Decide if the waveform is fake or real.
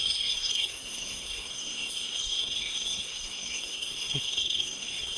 fake